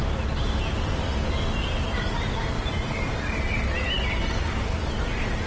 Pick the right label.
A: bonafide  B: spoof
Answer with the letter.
A